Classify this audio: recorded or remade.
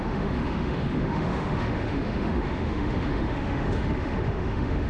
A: remade